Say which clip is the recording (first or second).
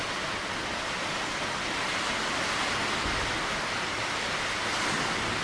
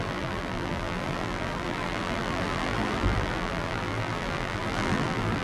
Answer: first